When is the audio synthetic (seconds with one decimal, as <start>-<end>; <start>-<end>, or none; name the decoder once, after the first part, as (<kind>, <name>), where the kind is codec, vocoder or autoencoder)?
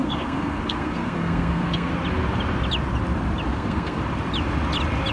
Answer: 0.0-1.9 (codec, SNAC); 3.5-4.0